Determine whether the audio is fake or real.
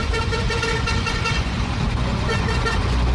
fake